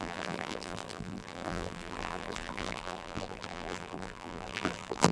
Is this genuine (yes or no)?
no